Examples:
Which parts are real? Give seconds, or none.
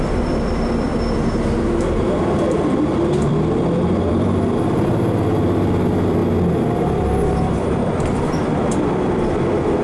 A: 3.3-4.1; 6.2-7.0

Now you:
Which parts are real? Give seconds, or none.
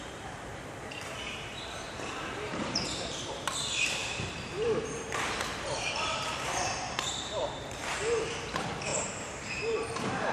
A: none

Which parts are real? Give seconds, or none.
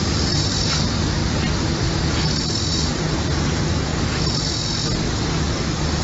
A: 1.2-2.7; 3.9-5.3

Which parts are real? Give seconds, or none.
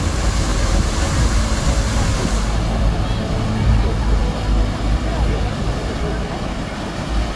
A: 0.0-0.5; 1.0-2.1; 2.6-7.4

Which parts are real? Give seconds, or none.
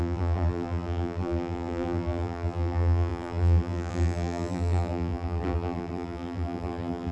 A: none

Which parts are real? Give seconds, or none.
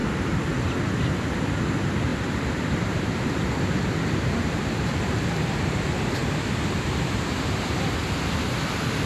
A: 0.0-2.1; 5.8-9.1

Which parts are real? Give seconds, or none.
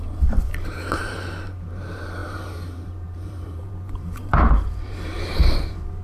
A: none